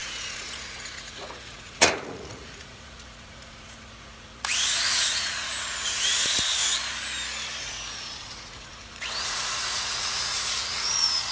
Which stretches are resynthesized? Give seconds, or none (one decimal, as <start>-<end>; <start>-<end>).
0.0-6.6; 7.6-11.3